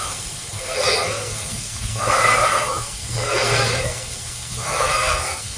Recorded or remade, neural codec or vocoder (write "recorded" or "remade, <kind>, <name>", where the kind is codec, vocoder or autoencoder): remade, codec, SNAC